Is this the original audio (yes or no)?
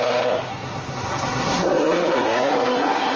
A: no